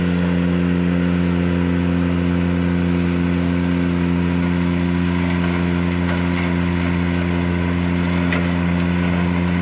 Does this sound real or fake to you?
real